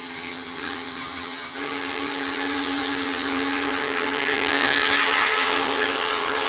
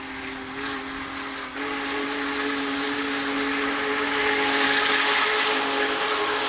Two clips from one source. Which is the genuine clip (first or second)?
second